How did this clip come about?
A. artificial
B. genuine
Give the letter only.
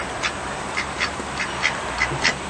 B